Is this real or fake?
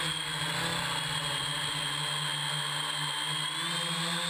real